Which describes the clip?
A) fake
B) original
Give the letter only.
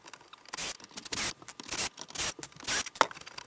B